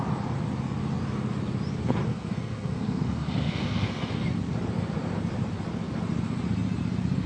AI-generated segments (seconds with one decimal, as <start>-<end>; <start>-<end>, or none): 2.1-4.1